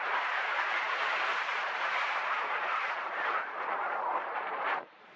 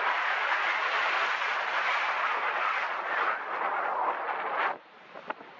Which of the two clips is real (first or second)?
second